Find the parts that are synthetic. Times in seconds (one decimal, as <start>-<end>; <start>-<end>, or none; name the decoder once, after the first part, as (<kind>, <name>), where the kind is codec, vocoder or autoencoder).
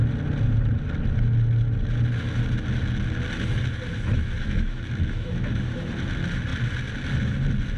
4.4-5.9 (autoencoder, DAC-VAE)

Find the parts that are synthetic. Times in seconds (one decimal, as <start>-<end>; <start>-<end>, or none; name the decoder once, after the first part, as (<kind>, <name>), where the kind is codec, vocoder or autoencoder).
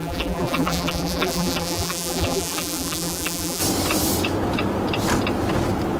0.0-3.6 (vocoder, BigVGAN v2)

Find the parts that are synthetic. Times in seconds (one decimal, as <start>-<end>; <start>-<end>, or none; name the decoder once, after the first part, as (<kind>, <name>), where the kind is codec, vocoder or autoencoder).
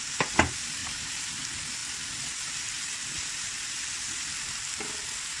0.8-1.4 (vocoder, BigVGAN v2)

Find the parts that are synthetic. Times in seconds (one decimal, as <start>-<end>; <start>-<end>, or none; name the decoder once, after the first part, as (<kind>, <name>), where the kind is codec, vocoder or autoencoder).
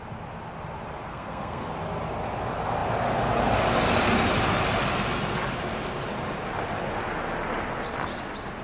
1.1-1.7 (codec, SNAC)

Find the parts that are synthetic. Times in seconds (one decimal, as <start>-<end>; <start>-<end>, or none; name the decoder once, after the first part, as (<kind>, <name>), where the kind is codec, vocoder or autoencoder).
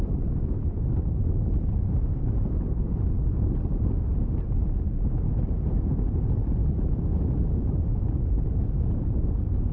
6.6-7.4 (autoencoder, DAC-VAE)